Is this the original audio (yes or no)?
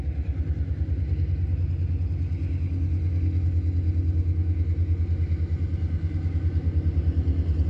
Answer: yes